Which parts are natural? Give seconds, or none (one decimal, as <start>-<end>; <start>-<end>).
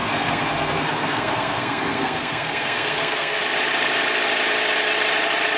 3.4-5.6